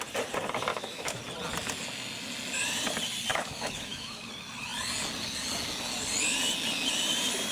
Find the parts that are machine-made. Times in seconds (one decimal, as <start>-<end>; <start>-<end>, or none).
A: 0.7-1.2; 3.3-4.2